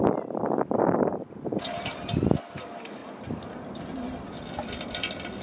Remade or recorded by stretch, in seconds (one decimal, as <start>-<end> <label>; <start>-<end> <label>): 0.0-1.1 recorded; 1.1-2.1 remade; 2.1-5.4 recorded